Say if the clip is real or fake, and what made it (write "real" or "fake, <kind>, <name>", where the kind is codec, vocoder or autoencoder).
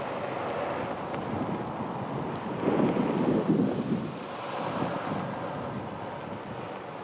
real